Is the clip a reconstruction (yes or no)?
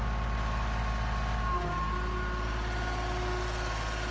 no